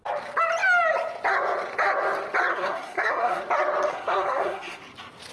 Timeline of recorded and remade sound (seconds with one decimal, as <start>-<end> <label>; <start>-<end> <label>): 0.0-2.5 recorded; 2.5-3.4 remade; 3.4-3.9 recorded; 3.9-4.8 remade; 4.8-5.3 recorded